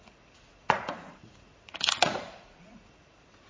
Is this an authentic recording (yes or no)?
no